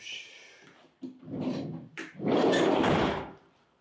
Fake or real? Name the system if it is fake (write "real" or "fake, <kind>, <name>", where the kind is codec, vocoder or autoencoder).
real